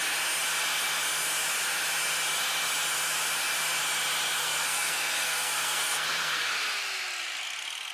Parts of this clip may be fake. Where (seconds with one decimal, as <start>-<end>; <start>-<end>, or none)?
4.4-6.5